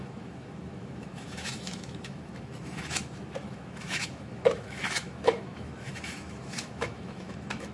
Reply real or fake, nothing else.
fake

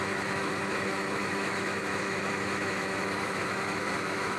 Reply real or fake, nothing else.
fake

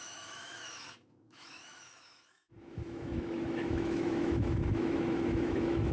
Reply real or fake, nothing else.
fake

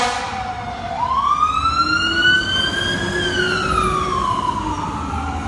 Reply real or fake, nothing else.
real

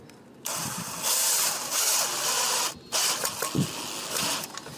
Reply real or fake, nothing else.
real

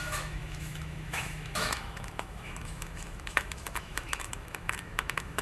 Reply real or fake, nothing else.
fake